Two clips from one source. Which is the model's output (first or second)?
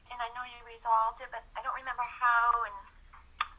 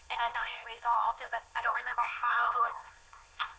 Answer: second